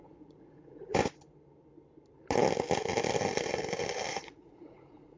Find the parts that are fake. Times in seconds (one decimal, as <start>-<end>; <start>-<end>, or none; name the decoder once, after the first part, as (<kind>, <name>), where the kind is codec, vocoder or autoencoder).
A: 0.0-1.0 (vocoder, Vocos); 4.1-5.2